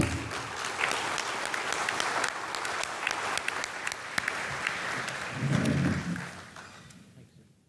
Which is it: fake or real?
real